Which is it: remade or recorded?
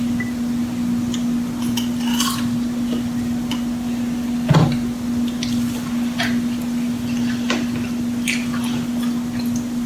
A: recorded